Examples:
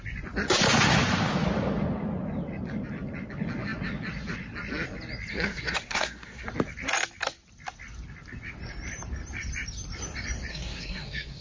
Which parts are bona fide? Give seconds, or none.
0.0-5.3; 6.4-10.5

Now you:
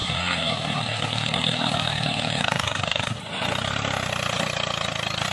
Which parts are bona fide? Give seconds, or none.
3.2-5.3

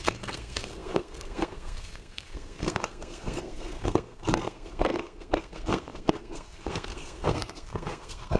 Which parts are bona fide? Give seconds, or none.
none